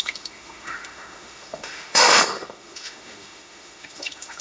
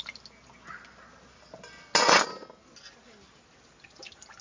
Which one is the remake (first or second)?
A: first